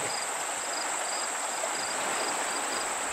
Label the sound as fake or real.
real